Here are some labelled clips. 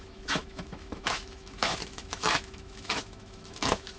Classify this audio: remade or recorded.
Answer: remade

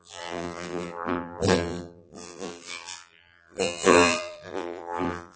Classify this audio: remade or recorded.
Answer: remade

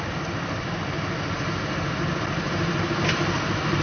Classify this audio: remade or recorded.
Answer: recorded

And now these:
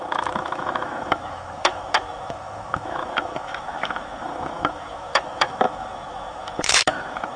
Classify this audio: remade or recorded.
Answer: remade